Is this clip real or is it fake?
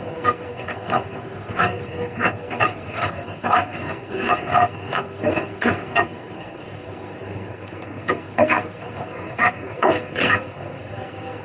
fake